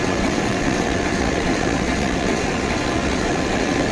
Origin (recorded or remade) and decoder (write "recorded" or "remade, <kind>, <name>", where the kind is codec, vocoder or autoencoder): remade, vocoder, WaveNeXt